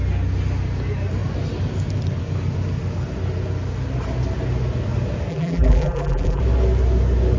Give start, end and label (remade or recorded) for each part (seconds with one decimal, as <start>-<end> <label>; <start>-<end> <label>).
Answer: 0.0-5.3 recorded; 5.3-6.4 remade; 6.4-7.4 recorded